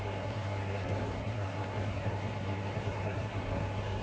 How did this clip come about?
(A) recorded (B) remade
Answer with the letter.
B